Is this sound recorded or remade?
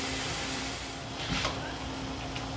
recorded